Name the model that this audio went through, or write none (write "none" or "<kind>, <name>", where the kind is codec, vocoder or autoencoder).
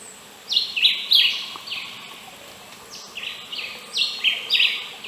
none